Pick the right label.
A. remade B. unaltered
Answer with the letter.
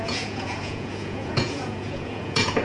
A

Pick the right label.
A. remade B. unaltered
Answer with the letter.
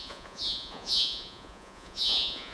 A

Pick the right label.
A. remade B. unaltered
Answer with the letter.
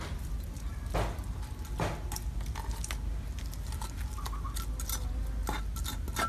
B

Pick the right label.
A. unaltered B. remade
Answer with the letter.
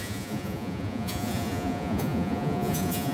B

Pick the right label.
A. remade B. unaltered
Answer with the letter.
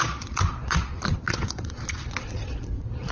A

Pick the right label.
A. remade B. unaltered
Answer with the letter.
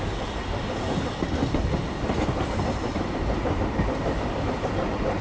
B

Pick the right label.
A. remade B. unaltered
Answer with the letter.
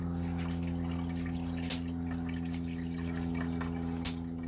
B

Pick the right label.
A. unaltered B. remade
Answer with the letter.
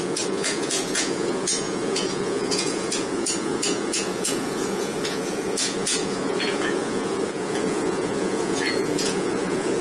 B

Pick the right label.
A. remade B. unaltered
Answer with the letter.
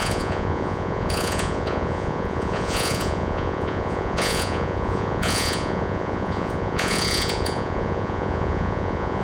A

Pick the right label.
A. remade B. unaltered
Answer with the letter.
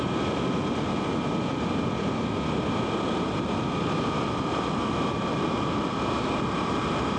B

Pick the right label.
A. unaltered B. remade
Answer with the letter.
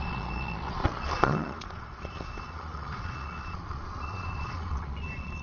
B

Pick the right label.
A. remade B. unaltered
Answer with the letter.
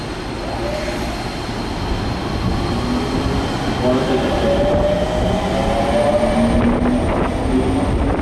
B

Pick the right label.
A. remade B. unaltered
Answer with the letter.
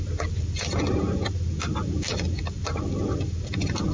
B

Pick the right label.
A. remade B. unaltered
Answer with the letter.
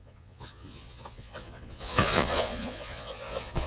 A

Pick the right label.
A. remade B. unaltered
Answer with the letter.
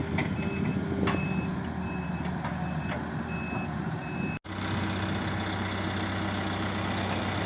B